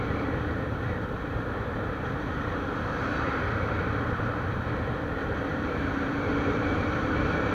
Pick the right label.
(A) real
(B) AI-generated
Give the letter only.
B